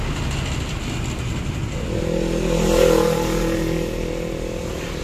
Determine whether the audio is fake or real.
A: real